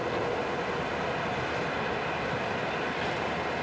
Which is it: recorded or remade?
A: recorded